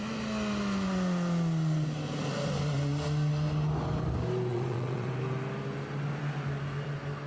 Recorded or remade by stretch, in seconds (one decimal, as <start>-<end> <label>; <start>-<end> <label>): 0.0-4.5 recorded; 4.5-5.1 remade; 5.1-7.3 recorded